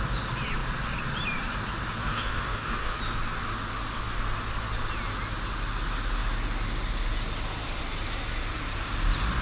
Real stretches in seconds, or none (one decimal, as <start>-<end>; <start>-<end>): 0.0-2.0; 3.0-9.4